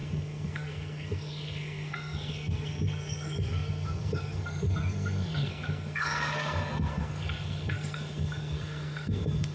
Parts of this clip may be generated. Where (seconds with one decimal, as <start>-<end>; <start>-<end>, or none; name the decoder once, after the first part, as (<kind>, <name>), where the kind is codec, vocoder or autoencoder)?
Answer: 0.0-9.5 (codec, SNAC)

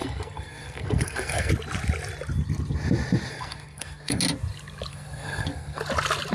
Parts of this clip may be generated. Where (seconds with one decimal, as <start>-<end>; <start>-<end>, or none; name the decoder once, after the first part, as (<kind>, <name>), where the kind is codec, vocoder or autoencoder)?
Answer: 0.0-1.5 (codec, SNAC); 3.3-4.2; 4.9-5.8

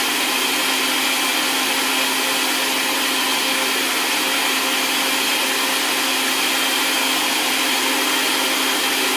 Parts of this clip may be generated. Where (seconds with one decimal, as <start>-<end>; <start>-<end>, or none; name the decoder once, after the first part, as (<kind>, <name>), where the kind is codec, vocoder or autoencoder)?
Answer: none

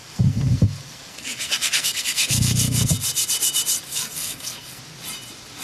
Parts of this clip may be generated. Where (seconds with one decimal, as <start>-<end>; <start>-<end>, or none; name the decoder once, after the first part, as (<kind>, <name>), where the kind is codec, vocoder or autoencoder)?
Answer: 0.0-2.9 (codec, SNAC); 3.9-4.8

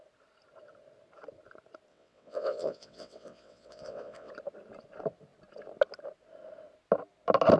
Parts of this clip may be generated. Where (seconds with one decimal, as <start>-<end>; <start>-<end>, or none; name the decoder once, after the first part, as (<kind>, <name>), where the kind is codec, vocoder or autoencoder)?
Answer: 1.9-4.3 (vocoder, WaveNeXt)

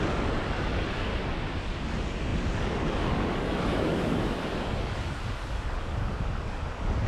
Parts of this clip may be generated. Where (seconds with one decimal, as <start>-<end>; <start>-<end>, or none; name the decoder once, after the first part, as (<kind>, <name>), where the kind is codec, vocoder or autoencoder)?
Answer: 0.0-1.1 (codec, DAC); 1.6-7.1

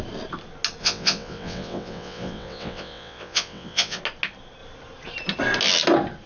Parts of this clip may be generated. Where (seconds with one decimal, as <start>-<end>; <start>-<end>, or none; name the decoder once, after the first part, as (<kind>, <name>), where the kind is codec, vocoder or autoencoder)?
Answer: 0.8-4.0 (vocoder, WaveNeXt)